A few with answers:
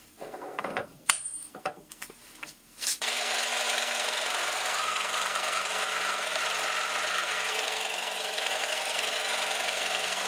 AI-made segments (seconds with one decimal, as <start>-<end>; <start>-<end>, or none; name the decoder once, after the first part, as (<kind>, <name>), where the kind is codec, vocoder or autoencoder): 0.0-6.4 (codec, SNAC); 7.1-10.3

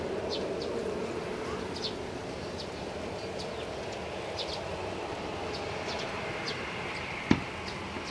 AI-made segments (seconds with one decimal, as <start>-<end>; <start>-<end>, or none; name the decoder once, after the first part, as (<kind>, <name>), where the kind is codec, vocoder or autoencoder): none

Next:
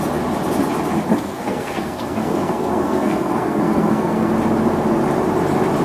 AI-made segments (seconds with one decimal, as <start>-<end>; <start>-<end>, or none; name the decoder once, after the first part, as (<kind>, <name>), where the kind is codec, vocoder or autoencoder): 1.1-4.3 (codec, SNAC)